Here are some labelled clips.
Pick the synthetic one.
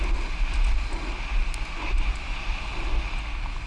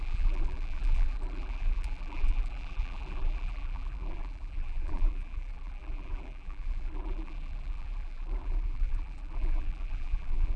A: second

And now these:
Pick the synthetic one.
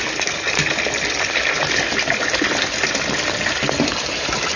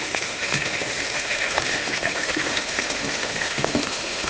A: second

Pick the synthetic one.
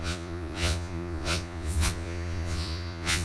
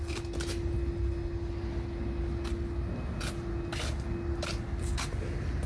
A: first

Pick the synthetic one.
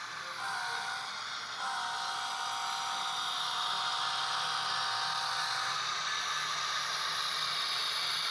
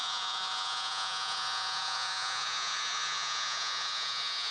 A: second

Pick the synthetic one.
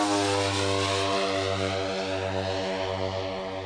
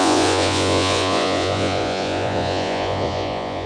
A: second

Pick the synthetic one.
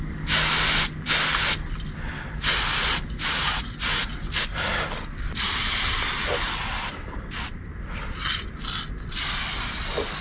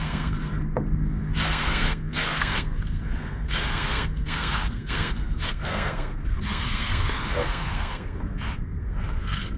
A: second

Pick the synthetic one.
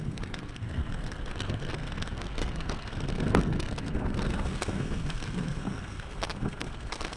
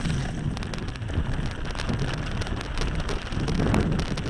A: first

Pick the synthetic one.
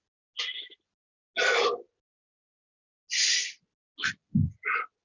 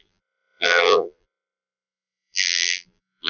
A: second